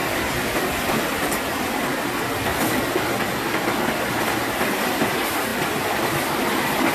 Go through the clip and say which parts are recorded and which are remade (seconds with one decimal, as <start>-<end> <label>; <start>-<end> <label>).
0.0-6.9 recorded